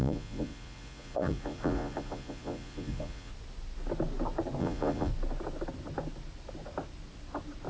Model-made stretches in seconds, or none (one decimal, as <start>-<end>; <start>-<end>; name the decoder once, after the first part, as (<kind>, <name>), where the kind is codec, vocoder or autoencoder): 0.0-3.3 (vocoder, Vocos); 4.6-5.1